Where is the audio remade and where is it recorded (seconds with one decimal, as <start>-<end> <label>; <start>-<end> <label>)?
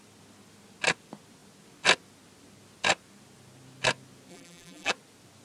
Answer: 0.0-4.3 recorded; 4.3-4.9 remade; 4.9-5.4 recorded